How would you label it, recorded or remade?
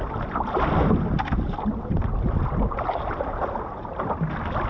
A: recorded